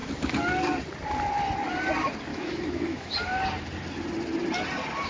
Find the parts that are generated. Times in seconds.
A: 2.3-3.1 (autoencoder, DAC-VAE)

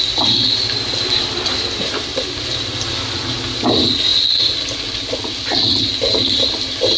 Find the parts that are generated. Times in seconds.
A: none

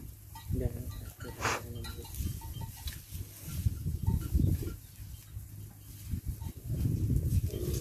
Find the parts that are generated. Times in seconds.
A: none